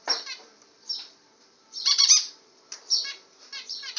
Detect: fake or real fake